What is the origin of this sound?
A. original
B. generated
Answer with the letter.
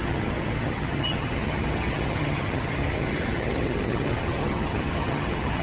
B